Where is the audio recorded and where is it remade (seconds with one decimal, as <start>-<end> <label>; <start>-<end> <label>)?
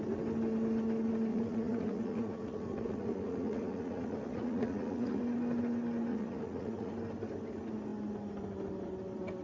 0.0-1.3 recorded; 1.3-5.2 remade; 5.2-6.1 recorded; 6.1-6.9 remade; 6.9-9.4 recorded